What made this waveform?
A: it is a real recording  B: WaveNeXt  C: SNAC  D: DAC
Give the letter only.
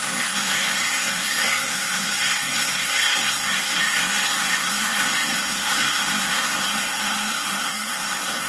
C